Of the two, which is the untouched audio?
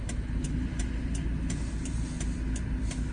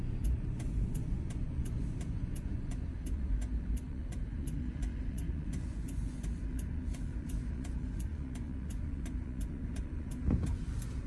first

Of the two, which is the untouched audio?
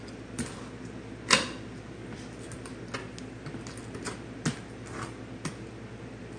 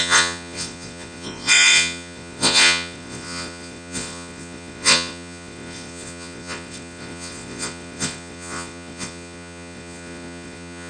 first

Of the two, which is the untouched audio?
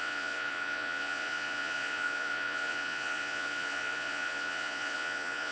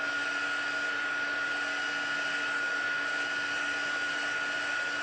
second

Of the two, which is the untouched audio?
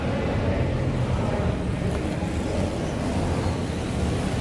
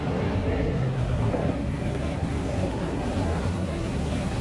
first